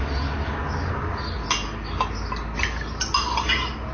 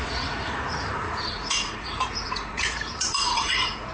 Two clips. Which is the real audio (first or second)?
first